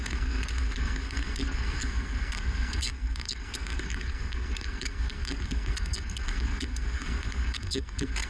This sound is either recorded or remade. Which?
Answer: remade